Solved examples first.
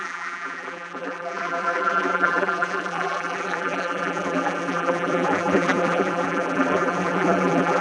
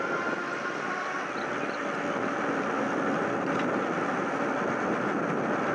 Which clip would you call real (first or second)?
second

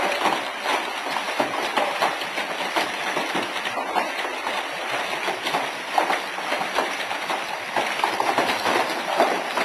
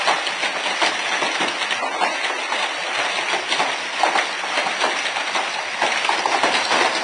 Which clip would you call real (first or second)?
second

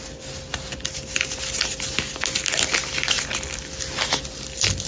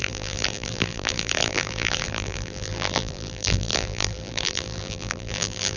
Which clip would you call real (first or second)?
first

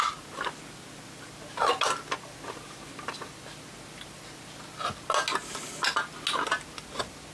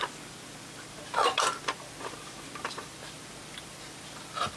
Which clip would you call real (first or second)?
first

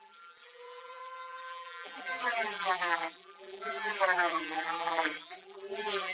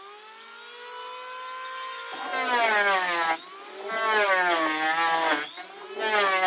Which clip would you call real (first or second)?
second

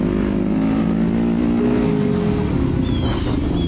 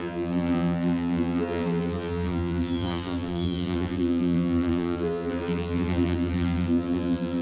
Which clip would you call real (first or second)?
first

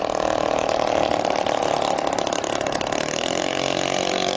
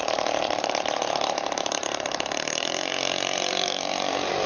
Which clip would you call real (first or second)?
first